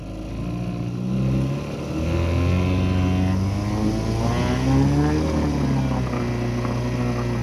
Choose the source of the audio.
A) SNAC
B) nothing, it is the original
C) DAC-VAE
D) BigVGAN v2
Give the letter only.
B